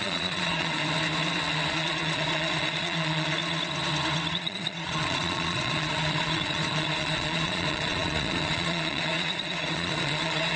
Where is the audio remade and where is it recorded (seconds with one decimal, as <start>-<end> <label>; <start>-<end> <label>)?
0.0-0.8 remade; 0.8-1.7 recorded; 1.7-3.4 remade; 3.4-4.3 recorded; 4.3-10.6 remade